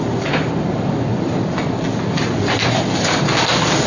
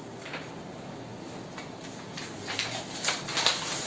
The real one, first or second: second